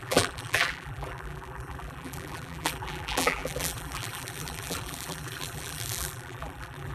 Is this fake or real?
fake